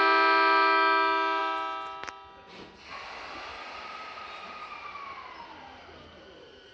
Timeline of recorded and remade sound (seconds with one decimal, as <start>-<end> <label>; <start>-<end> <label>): 0.0-3.5 recorded; 3.5-4.8 remade; 4.8-6.7 recorded